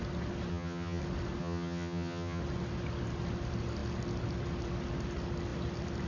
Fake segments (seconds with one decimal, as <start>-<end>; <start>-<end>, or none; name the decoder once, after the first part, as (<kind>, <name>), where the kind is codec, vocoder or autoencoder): 0.5-1.0 (vocoder, HiFi-GAN); 1.4-2.4